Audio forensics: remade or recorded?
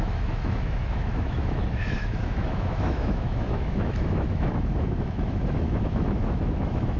remade